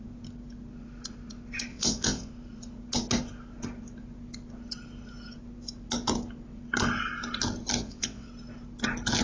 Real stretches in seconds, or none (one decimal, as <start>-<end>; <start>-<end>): 0.0-1.7; 2.3-7.8; 8.3-9.2